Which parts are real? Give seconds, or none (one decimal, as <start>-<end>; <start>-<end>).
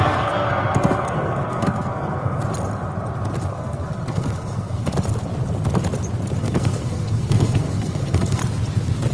2.4-3.5; 4.9-6.4; 8.4-9.1